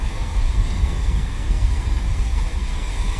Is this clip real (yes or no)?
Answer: no